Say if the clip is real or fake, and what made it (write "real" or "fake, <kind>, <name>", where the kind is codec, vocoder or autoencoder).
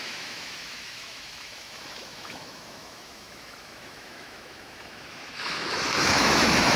fake, autoencoder, DAC-VAE